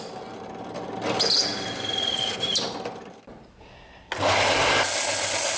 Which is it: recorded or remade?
recorded